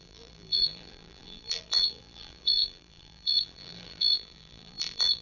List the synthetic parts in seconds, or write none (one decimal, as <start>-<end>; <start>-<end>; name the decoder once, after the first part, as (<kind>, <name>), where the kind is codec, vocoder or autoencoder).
0.0-5.2 (vocoder, BigVGAN v2)